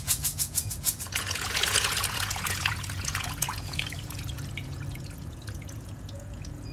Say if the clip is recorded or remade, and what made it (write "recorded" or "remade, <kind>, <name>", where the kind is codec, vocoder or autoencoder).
remade, vocoder, Vocos